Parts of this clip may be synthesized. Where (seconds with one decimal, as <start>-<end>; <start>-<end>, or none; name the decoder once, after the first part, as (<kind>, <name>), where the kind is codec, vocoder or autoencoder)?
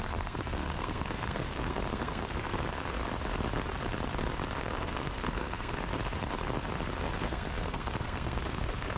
0.0-3.0 (codec, SNAC); 4.6-5.9; 7.0-9.0